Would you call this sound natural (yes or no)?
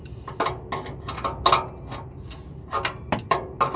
yes